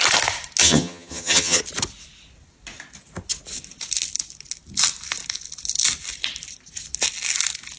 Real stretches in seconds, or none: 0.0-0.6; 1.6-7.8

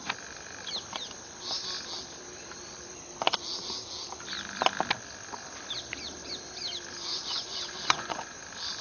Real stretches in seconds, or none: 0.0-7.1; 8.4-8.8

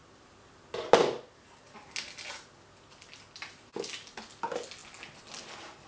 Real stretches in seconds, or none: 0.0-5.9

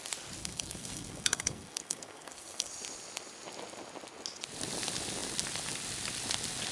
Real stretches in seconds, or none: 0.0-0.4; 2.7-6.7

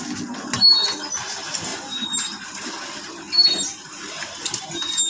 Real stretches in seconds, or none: 0.0-5.1

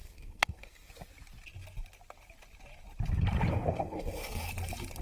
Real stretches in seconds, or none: 0.9-3.5; 4.5-5.0

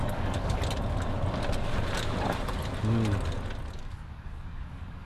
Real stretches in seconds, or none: 0.6-3.7